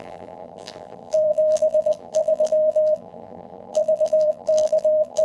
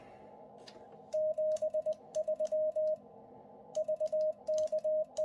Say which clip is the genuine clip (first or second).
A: second